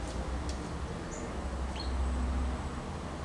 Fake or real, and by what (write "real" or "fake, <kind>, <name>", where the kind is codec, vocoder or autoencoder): real